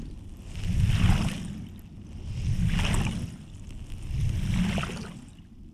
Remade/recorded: recorded